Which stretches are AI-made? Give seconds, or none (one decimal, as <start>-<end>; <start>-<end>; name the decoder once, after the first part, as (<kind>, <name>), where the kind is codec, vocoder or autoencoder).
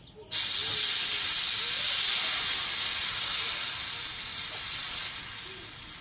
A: none